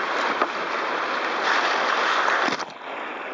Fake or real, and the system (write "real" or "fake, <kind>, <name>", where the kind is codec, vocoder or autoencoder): real